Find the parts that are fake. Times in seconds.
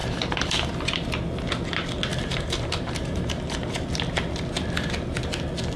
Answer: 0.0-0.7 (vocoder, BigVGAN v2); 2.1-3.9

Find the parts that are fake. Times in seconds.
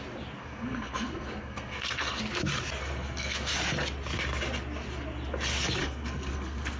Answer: 0.4-2.2 (codec, SNAC); 2.8-3.5; 5.8-6.8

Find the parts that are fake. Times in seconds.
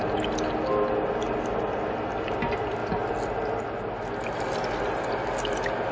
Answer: none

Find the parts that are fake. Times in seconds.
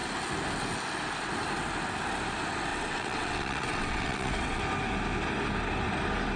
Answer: 2.7-4.6 (vocoder, WaveNeXt)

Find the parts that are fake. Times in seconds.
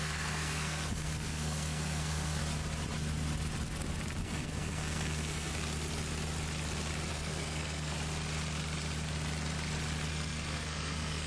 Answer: 0.0-2.4 (codec, SNAC); 4.2-5.5; 7.1-7.9; 10.1-11.3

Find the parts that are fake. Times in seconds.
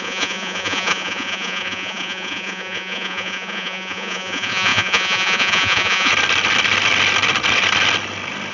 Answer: 0.0-6.1 (vocoder, Vocos)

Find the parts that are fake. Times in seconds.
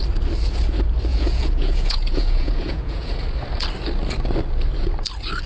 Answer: 1.1-3.1 (vocoder, Vocos)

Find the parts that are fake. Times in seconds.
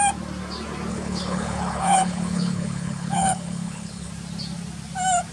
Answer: 0.9-4.1 (codec, HILCodec)